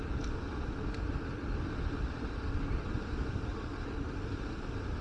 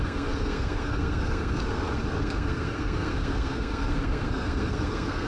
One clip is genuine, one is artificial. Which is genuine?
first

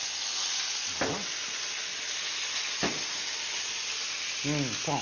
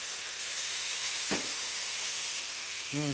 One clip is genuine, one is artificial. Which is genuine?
first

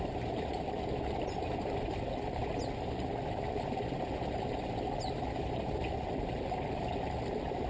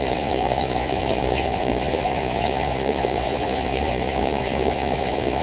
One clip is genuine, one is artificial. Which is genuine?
first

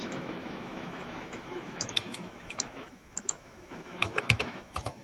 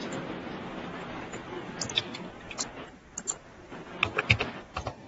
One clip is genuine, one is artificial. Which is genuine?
second